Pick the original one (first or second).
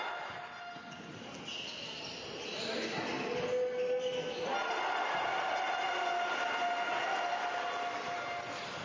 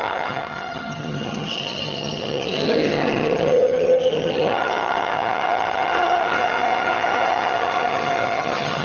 first